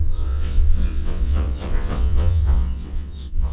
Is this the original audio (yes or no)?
no